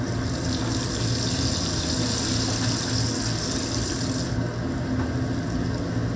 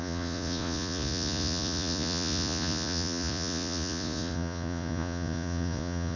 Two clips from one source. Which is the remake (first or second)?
second